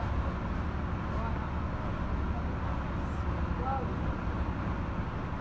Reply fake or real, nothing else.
real